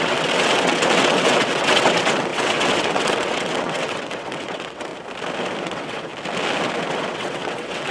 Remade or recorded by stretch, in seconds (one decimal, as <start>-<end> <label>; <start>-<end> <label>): 0.0-4.9 remade; 4.9-5.6 recorded; 5.6-6.1 remade; 6.1-6.9 recorded; 6.9-7.9 remade